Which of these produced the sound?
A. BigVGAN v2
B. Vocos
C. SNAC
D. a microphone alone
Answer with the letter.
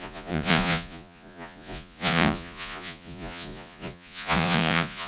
B